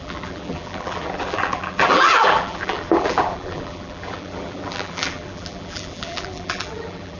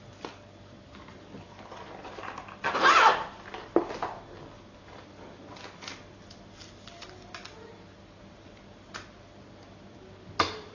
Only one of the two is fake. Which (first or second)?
first